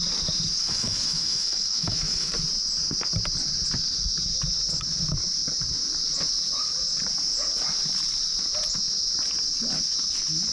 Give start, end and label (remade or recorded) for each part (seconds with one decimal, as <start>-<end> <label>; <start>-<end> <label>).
0.0-0.6 recorded; 0.6-2.3 remade; 2.3-10.5 recorded